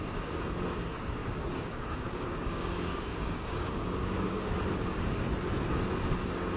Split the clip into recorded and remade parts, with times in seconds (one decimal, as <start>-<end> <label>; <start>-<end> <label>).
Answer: 0.0-1.2 recorded; 1.2-5.2 remade; 5.2-6.6 recorded